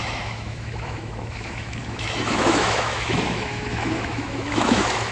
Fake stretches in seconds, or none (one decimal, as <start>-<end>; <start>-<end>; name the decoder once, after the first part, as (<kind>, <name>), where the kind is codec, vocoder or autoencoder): 0.0-5.1 (autoencoder, DAC-VAE)